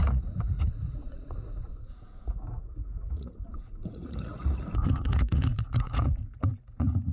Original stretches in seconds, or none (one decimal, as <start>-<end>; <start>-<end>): none